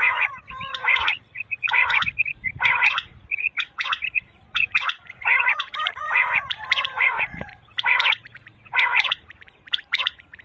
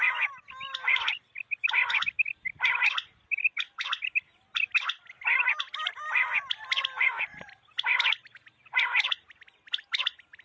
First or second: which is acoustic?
second